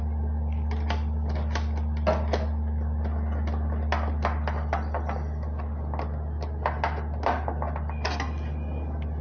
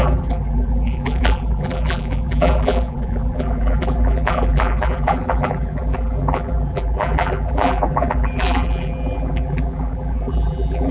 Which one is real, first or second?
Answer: first